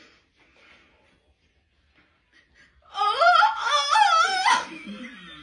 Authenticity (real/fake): real